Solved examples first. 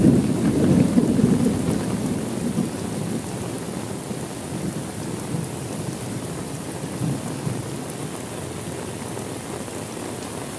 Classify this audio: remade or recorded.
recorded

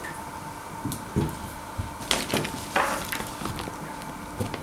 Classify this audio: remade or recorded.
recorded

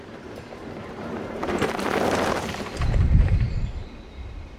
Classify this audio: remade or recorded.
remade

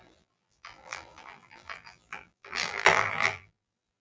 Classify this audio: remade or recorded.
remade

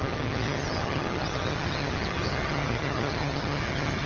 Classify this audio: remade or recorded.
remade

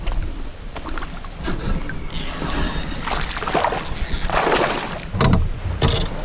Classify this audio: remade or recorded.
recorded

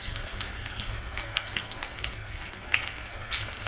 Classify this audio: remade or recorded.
remade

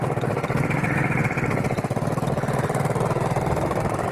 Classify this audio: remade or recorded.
recorded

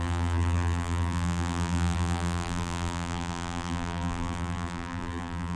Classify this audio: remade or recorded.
remade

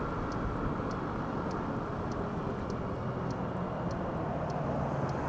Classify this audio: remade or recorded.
recorded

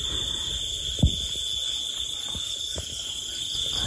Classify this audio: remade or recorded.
recorded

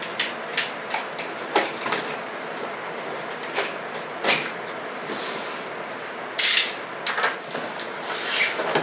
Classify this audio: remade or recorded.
recorded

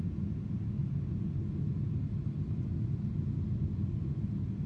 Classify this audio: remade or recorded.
recorded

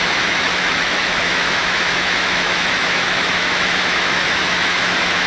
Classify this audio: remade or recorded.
remade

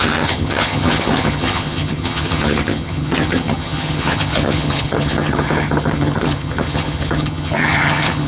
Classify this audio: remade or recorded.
remade